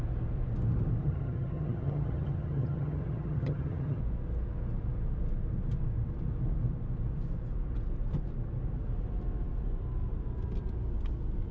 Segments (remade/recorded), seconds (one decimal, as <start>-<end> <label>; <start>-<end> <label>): 0.0-1.0 recorded; 1.0-4.0 remade; 4.0-11.5 recorded